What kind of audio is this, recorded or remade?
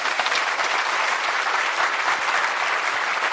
recorded